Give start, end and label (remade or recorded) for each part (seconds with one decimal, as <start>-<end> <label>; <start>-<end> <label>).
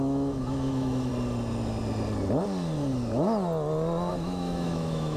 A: 0.0-1.1 remade; 1.1-4.1 recorded; 4.1-5.2 remade